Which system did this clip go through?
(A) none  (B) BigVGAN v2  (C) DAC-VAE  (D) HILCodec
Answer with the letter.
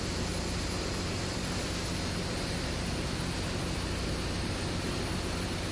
A